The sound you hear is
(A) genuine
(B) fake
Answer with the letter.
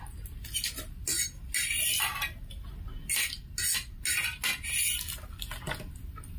A